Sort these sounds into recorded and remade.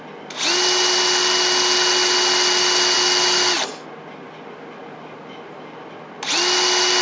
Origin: recorded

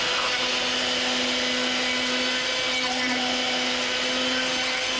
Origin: recorded